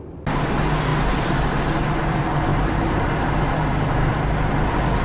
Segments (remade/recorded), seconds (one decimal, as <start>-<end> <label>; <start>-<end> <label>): 0.0-2.5 recorded; 2.5-3.3 remade; 3.3-5.0 recorded